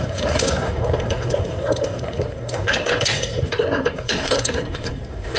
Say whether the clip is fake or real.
fake